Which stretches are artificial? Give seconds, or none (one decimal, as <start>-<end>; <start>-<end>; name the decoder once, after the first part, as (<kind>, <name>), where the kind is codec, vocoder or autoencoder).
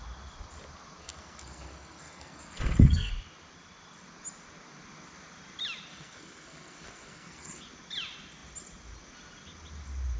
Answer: 1.0-3.1 (codec, SNAC); 5.9-7.6